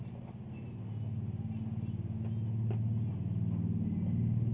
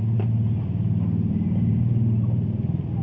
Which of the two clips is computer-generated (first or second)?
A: second